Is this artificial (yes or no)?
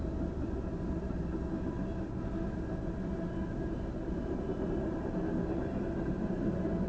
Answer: no